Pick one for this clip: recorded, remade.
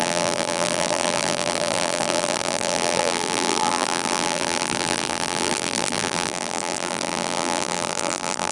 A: remade